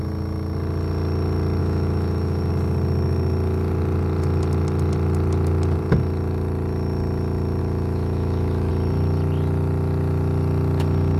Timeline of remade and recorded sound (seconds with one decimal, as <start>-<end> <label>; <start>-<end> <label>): 0.0-1.6 recorded; 1.6-2.5 remade; 2.5-7.6 recorded; 7.6-8.7 remade; 8.7-11.2 recorded